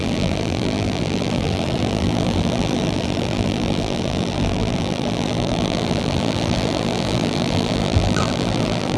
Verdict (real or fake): fake